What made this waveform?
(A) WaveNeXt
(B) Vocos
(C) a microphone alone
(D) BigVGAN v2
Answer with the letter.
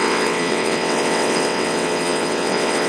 A